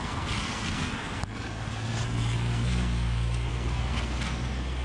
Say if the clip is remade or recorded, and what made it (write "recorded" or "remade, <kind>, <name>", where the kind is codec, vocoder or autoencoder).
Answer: remade, codec, SNAC